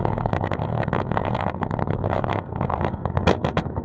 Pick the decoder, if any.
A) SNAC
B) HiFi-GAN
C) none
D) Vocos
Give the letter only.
A